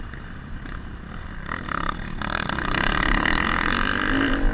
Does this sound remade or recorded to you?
recorded